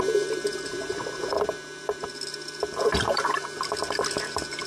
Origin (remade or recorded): recorded